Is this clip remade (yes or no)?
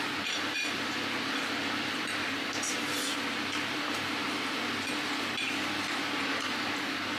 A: no